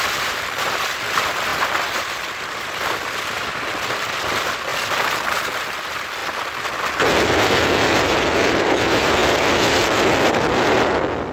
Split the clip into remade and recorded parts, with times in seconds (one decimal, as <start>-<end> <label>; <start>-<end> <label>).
0.0-1.5 remade; 1.5-2.3 recorded; 2.3-4.7 remade; 4.7-5.6 recorded; 5.6-6.2 remade; 6.2-8.6 recorded; 8.6-9.2 remade; 9.2-10.3 recorded; 10.3-11.3 remade